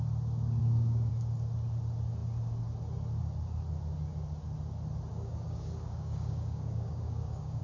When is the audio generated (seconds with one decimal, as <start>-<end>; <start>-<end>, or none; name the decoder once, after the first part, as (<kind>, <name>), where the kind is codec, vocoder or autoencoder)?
0.6-1.1 (codec, DAC); 5.1-7.6